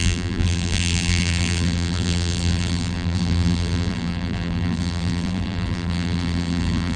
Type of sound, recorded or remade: remade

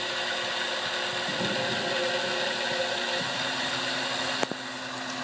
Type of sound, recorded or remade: recorded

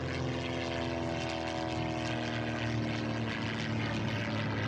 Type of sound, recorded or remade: recorded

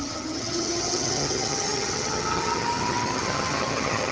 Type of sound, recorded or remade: remade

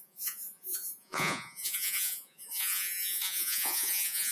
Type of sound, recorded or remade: remade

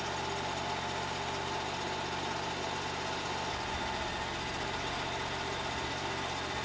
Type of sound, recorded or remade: recorded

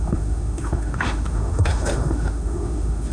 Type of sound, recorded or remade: remade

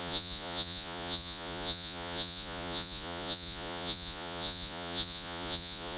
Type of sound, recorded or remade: remade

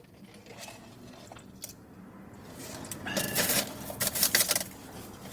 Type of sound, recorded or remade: recorded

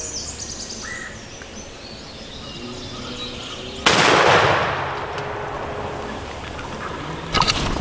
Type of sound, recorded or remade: recorded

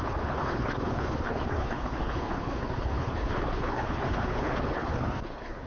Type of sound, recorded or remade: remade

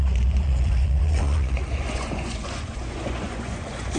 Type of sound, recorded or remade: remade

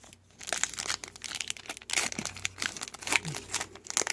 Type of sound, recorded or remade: recorded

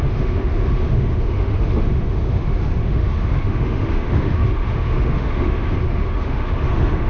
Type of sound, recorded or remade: remade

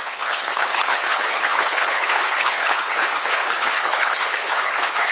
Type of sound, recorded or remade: remade